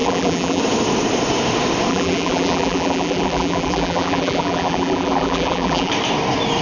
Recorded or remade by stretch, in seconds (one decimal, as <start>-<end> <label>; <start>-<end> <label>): 0.0-0.6 remade; 0.6-1.9 recorded; 1.9-5.9 remade; 5.9-6.6 recorded